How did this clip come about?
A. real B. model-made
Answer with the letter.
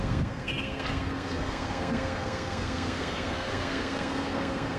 B